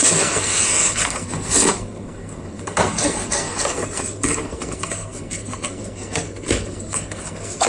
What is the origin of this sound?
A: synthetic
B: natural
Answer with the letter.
A